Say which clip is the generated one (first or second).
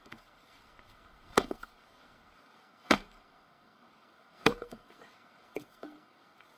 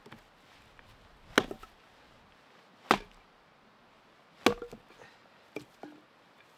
first